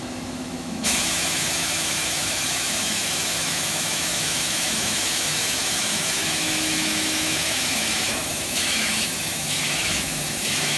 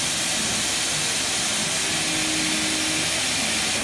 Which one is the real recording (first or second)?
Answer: second